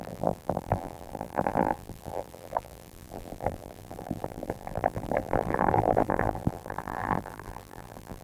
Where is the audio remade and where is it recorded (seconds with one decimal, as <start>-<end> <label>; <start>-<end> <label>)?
0.0-8.2 remade